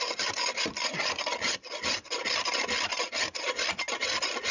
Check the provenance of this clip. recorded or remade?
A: recorded